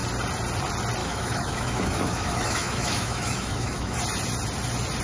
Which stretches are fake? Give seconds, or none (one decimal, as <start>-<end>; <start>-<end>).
1.0-4.0